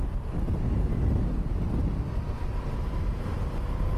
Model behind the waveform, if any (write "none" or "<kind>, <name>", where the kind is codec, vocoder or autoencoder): none